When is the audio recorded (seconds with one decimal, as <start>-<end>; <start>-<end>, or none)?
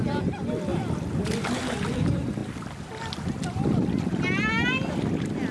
0.0-5.5